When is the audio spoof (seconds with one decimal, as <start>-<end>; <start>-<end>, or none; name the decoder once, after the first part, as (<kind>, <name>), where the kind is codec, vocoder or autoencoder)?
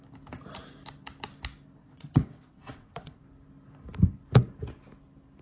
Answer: 1.8-3.2 (vocoder, WaveNeXt)